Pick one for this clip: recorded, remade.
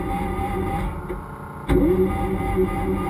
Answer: recorded